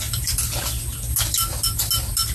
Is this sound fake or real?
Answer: real